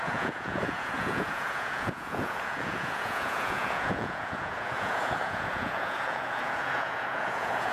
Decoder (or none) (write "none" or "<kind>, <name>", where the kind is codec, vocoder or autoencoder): vocoder, Vocos